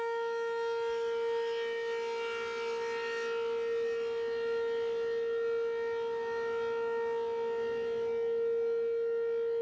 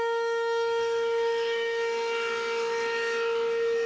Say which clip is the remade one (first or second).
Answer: second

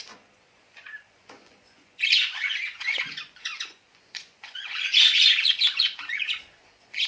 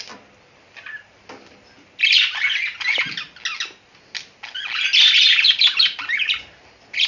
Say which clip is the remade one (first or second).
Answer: first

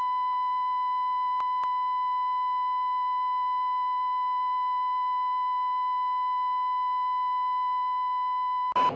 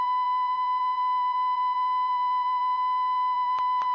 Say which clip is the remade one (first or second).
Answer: second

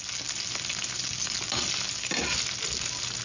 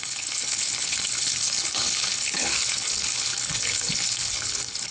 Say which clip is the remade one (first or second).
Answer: second